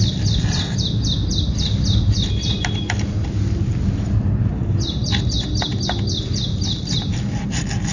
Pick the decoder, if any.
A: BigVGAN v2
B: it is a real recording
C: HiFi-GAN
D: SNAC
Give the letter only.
B